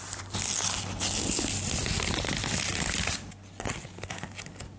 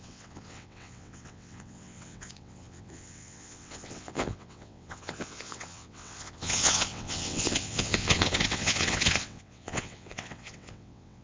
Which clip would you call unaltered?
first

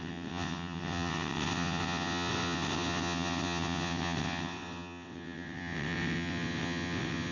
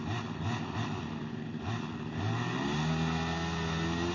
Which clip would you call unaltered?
second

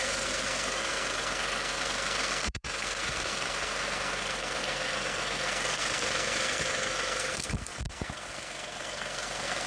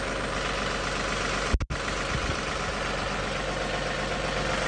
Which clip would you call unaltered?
second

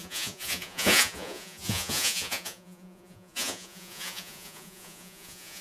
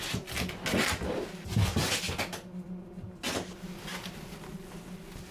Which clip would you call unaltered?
second